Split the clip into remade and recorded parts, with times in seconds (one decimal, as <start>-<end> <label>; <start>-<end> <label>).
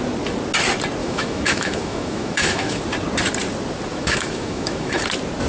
0.0-1.0 recorded; 1.0-2.8 remade; 2.8-3.9 recorded; 3.9-5.0 remade; 5.0-5.5 recorded